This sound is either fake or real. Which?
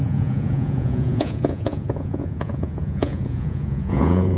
fake